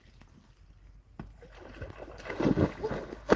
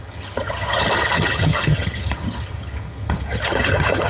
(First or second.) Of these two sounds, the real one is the first